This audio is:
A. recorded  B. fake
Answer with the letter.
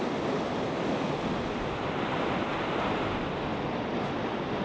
A